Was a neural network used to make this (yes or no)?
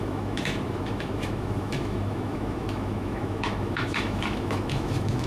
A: yes